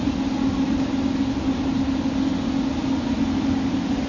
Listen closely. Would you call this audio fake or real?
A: real